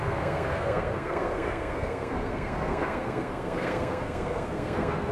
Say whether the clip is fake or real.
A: fake